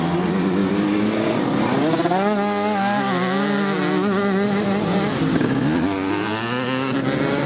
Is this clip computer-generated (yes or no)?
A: no